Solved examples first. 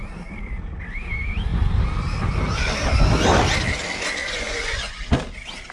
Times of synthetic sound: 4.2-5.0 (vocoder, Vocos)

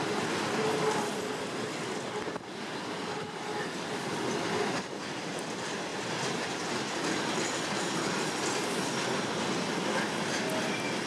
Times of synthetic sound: none

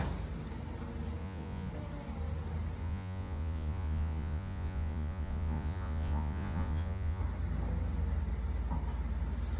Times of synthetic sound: 1.2-1.7 (vocoder, Vocos); 2.8-7.2

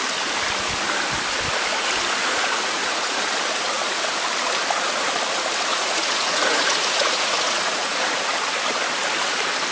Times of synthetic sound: 2.2-3.3 (vocoder, Vocos); 5.7-8.2

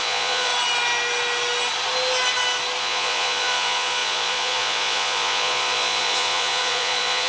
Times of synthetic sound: 0.0-0.5 (vocoder, Vocos); 2.8-7.3

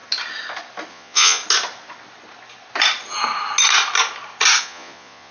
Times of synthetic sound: 0.9-1.4 (vocoder, Vocos); 4.6-5.3

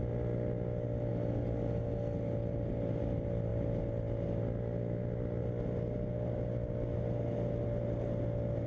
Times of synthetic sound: none

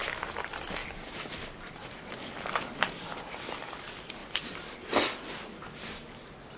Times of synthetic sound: none